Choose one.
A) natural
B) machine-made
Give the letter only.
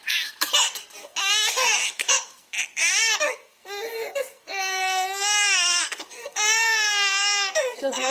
B